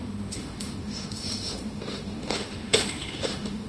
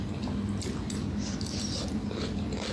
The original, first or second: second